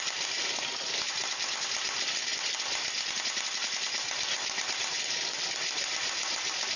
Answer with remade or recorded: recorded